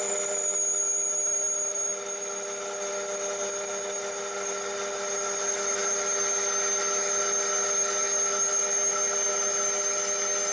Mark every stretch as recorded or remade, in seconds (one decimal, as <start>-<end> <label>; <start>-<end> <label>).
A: 0.0-10.5 recorded